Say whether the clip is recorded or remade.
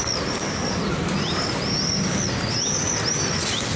recorded